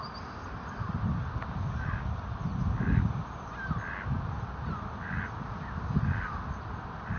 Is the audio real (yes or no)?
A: yes